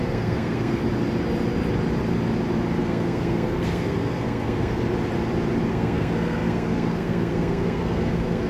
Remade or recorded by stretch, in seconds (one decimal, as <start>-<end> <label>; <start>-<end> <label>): 0.0-0.8 remade; 0.8-2.8 recorded; 2.8-4.8 remade; 4.8-5.7 recorded; 5.7-8.5 remade